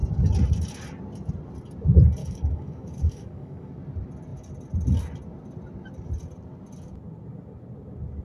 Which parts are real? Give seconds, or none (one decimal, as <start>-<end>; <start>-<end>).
0.0-2.2; 3.7-8.2